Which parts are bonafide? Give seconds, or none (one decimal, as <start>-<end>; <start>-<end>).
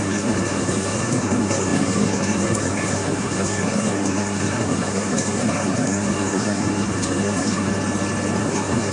7.7-8.4